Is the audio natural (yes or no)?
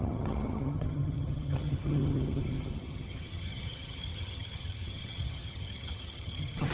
no